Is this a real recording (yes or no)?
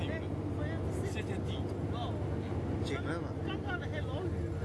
yes